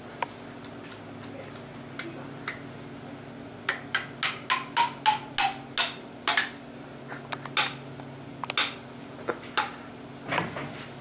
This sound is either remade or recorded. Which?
recorded